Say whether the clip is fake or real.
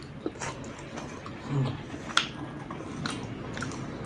real